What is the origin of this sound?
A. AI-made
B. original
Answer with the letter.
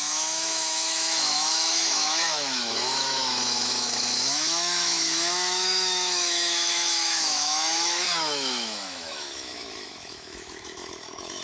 A